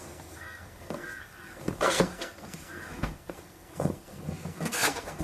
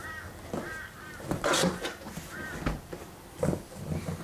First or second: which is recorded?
second